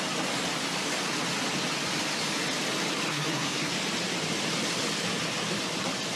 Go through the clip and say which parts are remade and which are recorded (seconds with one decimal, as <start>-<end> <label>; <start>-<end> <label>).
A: 0.0-3.1 recorded; 3.1-3.7 remade; 3.7-6.2 recorded